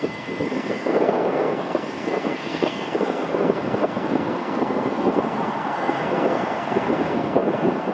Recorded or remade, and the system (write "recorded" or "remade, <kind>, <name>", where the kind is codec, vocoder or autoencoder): remade, codec, SNAC